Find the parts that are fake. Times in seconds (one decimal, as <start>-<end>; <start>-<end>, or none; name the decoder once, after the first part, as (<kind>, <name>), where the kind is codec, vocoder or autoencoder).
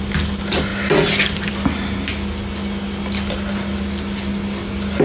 none